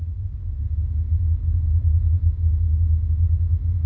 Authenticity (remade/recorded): recorded